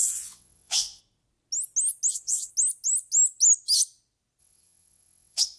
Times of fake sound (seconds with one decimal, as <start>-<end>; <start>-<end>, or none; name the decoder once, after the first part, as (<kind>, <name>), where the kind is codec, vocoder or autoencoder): 0.0-1.0 (vocoder, WaveNeXt); 2.1-2.5; 4.4-5.6